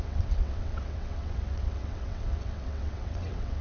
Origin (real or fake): fake